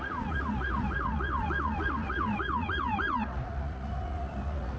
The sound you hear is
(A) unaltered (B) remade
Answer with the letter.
B